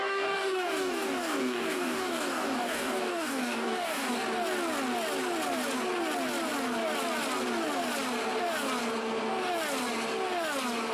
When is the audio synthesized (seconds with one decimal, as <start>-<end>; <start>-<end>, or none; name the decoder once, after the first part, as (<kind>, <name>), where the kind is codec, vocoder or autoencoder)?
0.0-4.1 (codec, DAC)